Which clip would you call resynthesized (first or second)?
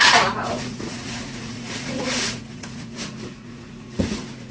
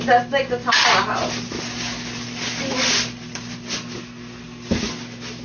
first